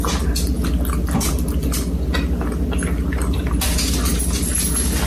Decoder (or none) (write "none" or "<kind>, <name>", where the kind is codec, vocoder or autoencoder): none